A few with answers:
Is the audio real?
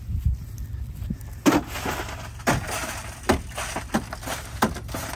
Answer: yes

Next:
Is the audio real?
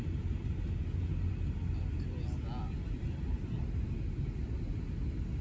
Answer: yes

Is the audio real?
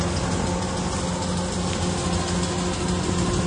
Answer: yes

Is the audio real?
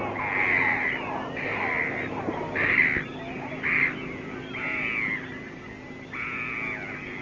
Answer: yes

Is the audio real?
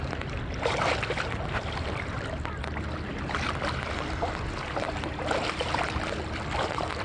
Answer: yes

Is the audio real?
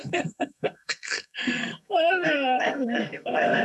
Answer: no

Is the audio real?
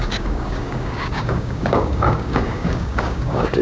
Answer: no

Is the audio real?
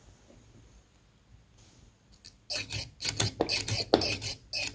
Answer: yes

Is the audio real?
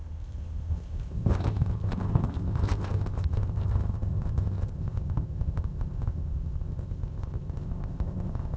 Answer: no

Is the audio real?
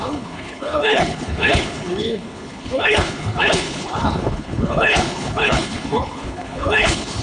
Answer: no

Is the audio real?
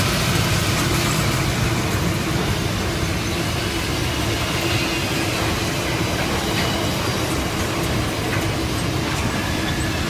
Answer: yes